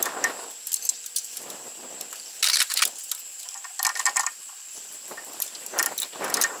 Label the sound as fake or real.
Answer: real